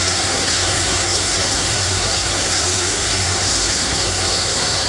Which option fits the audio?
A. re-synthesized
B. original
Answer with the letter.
A